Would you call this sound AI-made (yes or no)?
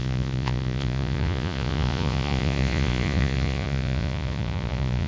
yes